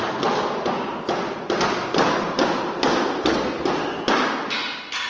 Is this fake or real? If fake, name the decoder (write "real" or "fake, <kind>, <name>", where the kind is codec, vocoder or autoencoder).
real